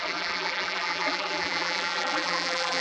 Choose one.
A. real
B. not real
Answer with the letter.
B